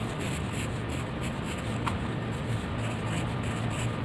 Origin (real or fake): real